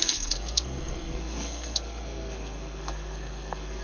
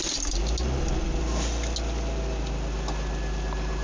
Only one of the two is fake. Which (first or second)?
first